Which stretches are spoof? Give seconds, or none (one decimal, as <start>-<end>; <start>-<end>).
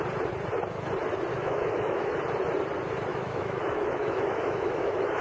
1.3-2.2; 3.1-5.2